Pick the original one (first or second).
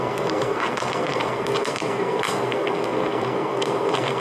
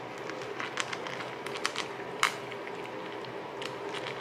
second